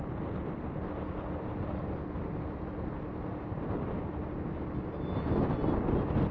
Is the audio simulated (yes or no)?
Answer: no